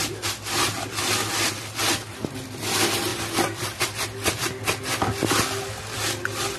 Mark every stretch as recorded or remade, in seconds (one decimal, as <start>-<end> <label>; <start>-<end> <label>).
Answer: 0.0-3.1 recorded; 3.1-3.8 remade; 3.8-6.6 recorded